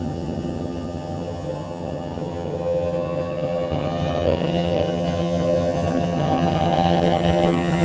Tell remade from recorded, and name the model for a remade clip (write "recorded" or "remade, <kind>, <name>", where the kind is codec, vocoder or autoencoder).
remade, vocoder, HiFi-GAN